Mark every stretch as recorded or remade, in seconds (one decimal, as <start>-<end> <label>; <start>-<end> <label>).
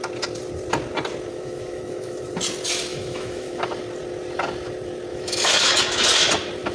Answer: 0.0-1.3 recorded; 1.3-2.3 remade; 2.3-2.9 recorded; 2.9-3.6 remade; 3.6-5.1 recorded; 5.1-6.0 remade; 6.0-6.7 recorded